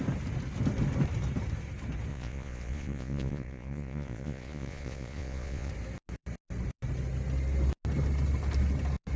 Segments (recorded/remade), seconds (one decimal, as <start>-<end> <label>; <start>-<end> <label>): 0.0-2.1 recorded; 2.1-5.7 remade; 5.7-9.2 recorded